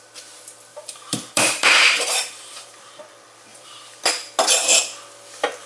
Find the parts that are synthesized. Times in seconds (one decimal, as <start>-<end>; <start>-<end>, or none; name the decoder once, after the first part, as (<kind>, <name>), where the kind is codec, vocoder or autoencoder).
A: 0.7-3.0 (vocoder, BigVGAN v2); 3.5-4.1